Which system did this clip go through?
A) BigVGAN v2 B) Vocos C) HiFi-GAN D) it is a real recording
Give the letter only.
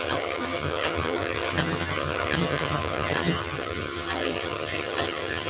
C